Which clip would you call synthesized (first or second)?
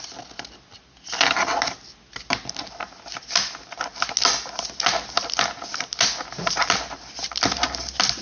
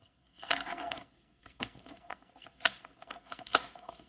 second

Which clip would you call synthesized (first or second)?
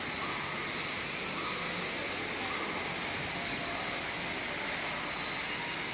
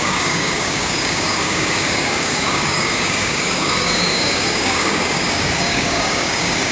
second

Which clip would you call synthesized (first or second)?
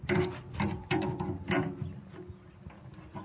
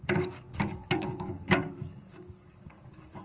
second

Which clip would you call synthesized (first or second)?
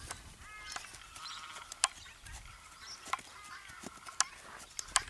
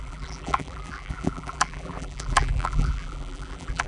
second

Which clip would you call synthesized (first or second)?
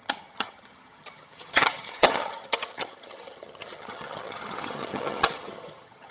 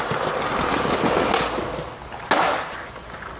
first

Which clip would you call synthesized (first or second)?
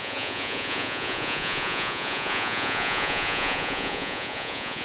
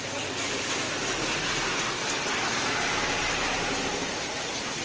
first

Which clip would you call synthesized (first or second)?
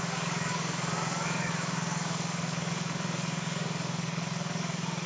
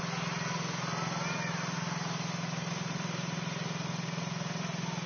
first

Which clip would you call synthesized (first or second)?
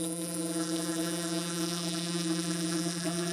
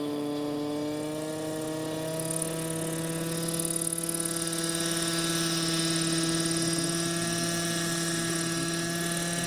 first